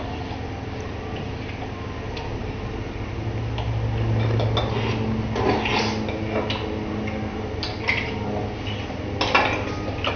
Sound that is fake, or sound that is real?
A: real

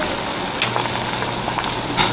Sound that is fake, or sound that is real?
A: real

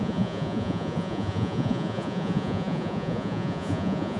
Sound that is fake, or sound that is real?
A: fake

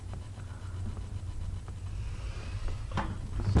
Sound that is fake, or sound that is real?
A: real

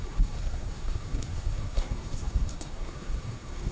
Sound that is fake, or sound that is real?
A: fake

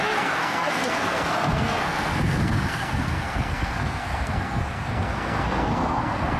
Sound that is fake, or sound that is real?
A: fake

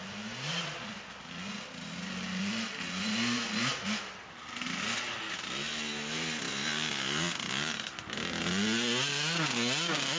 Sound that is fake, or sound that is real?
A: real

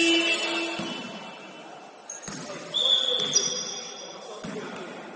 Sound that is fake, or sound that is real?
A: real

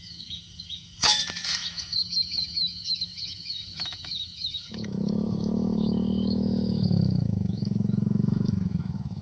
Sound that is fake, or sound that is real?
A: fake